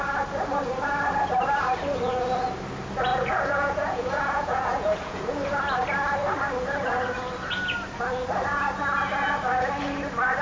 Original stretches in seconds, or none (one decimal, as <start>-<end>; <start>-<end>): 0.0-3.1; 5.2-10.4

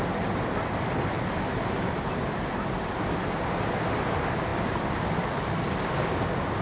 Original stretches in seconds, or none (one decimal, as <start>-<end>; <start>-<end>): 0.0-6.6

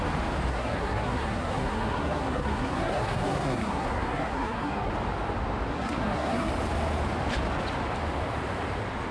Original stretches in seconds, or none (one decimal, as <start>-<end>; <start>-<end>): 0.0-0.5; 4.9-5.7; 6.5-9.1

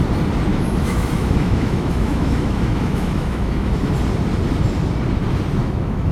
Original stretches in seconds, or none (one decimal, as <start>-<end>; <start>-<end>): 0.0-0.5; 3.9-5.6

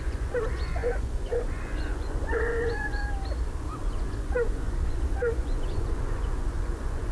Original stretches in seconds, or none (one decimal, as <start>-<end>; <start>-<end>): 3.0-3.6

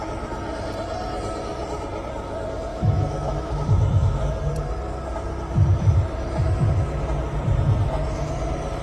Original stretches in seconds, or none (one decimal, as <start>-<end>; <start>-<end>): 0.0-2.7; 4.2-8.8